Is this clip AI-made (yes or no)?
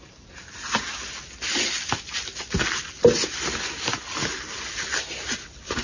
no